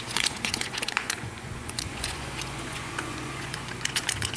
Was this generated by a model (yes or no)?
yes